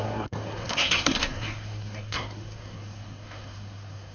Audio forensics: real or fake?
fake